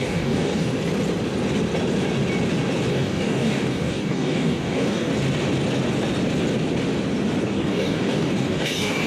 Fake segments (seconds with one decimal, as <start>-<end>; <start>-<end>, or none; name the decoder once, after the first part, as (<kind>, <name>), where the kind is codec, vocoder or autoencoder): 0.0-0.7 (codec, DAC); 2.9-5.1; 7.4-9.1